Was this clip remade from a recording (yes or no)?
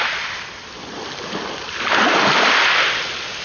no